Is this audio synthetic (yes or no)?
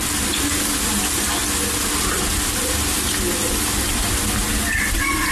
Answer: no